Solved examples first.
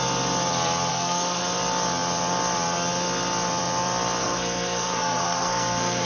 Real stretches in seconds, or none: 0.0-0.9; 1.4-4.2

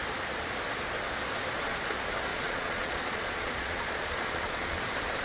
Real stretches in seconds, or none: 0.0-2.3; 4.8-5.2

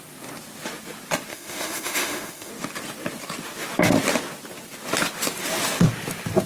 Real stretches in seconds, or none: 0.0-1.3; 2.5-6.5

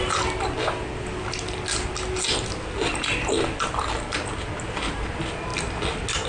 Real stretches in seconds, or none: 0.0-6.3

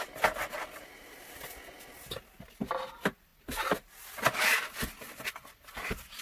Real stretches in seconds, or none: 0.0-6.2